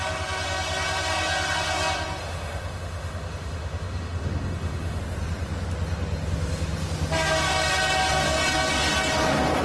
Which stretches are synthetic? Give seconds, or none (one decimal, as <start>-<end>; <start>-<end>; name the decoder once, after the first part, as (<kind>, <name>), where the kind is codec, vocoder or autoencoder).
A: 2.2-5.0 (autoencoder, DAC-VAE)

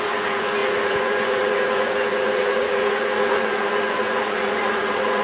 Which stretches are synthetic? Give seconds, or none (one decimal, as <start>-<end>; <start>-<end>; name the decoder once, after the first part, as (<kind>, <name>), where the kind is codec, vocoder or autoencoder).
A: 0.0-5.2 (vocoder, Vocos)

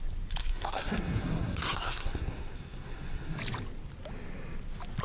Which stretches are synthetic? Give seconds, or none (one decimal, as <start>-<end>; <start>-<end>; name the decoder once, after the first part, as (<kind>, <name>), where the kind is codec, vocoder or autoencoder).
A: 0.4-3.4 (codec, SNAC)

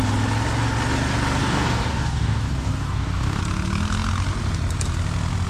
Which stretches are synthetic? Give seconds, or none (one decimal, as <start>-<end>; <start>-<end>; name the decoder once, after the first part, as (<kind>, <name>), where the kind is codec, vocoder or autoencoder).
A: 1.4-3.4 (codec, DAC)

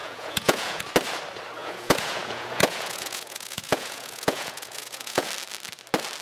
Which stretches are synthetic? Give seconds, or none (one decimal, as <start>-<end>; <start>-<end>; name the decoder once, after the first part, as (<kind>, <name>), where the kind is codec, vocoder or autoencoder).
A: 0.0-0.8 (vocoder, Vocos); 1.6-5.3

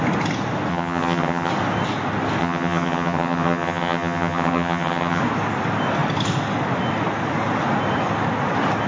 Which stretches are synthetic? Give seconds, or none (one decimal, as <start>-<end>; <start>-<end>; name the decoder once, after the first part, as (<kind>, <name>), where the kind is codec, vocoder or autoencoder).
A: 0.7-1.5 (vocoder, HiFi-GAN); 2.4-5.2